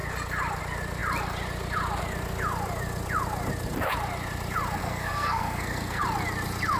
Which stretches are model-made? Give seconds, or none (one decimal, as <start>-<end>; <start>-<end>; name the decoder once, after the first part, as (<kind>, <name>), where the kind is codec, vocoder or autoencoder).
4.8-6.0 (codec, SNAC)